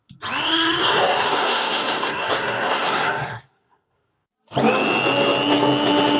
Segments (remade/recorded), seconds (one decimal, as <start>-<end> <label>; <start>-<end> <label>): 0.0-0.4 recorded; 0.4-4.1 remade; 4.1-6.2 recorded